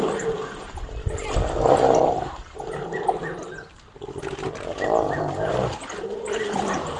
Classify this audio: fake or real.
real